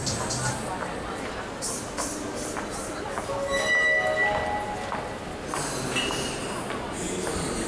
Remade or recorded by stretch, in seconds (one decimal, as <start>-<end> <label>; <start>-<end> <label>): 0.0-7.7 recorded